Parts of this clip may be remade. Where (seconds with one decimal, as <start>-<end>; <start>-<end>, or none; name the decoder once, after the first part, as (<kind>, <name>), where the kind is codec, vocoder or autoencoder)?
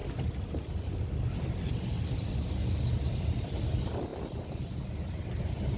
none